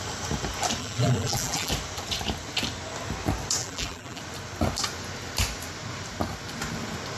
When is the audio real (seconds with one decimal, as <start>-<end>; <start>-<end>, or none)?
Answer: 0.0-0.8; 1.7-3.6; 4.2-7.2